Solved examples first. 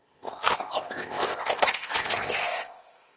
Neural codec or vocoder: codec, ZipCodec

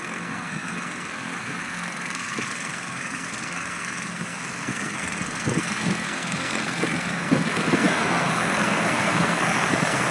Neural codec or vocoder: codec, SNAC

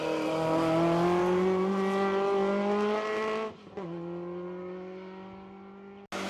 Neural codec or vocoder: none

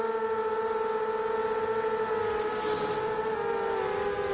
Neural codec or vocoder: none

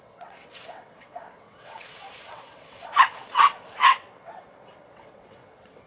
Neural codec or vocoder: vocoder, WaveNeXt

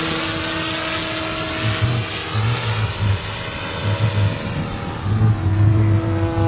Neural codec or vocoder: none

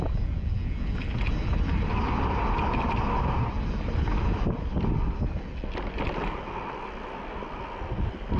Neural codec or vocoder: none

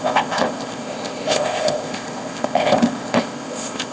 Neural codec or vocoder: codec, ZipCodec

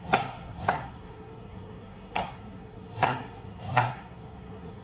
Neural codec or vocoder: codec, SNAC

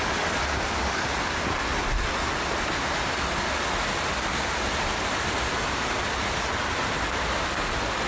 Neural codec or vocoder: none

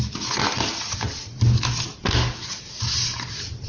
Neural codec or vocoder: none